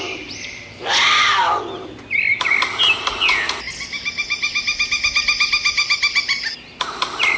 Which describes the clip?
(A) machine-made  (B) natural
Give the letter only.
B